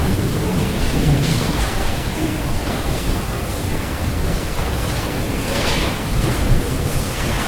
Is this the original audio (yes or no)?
no